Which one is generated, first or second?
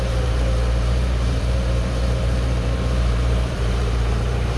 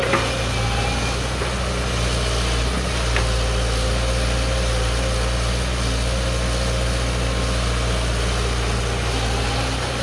first